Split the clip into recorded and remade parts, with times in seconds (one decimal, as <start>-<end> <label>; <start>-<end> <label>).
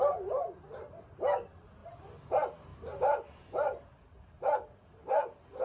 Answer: 0.0-5.6 recorded